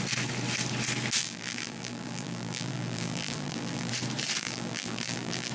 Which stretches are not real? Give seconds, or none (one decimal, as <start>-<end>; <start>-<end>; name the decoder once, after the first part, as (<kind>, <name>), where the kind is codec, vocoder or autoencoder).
1.2-3.9 (vocoder, BigVGAN v2); 4.4-5.5